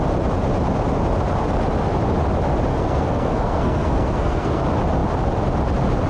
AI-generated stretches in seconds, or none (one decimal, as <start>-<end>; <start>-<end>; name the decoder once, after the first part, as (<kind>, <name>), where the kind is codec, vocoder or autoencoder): 2.7-4.6 (codec, SNAC)